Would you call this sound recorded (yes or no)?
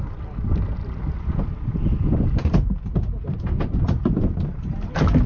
yes